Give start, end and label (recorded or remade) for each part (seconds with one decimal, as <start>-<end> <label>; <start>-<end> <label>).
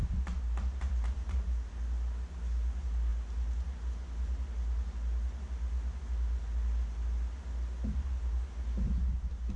0.0-9.6 recorded